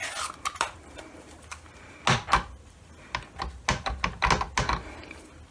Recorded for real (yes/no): yes